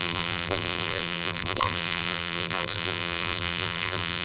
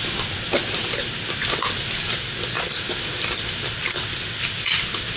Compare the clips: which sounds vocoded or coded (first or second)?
first